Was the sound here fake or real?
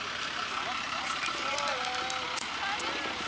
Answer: real